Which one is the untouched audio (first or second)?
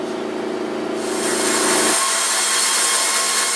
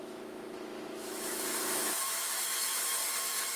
first